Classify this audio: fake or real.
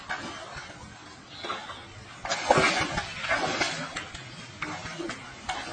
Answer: real